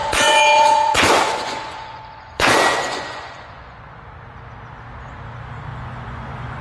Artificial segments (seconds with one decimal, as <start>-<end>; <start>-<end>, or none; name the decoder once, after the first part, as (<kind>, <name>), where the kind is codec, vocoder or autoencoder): 0.0-4.0 (vocoder, Vocos); 5.7-6.6